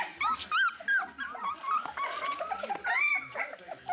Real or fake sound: real